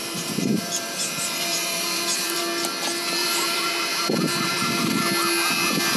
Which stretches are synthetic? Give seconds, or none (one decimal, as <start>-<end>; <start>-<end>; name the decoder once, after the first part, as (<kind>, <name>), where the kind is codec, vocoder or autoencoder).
0.0-2.4 (vocoder, BigVGAN v2); 3.2-4.9